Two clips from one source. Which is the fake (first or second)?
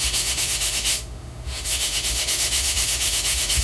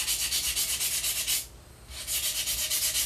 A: first